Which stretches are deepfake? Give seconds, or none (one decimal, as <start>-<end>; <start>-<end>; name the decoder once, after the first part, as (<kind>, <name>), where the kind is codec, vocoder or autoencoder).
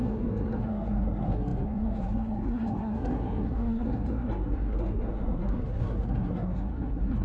0.0-7.2 (codec, SNAC)